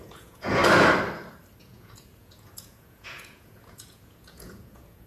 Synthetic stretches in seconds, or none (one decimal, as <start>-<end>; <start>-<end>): 0.0-0.6; 1.6-5.1